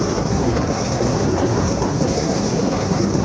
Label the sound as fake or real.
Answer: fake